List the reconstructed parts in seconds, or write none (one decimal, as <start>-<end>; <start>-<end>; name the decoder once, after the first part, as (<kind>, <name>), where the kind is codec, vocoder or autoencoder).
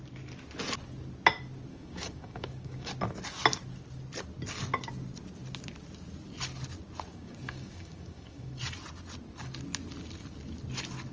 1.7-2.9 (codec, DAC); 7.1-8.6